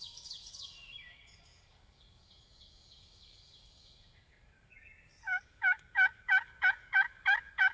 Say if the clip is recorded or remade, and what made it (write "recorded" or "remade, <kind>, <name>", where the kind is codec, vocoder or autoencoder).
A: remade, codec, DAC